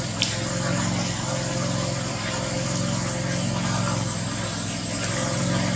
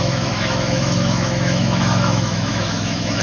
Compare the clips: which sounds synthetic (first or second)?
second